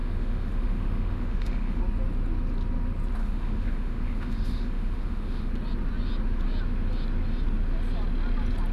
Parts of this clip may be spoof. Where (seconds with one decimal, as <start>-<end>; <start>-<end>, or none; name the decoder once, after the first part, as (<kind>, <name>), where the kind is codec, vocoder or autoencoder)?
0.0-1.8 (autoencoder, DAC-VAE); 3.2-5.5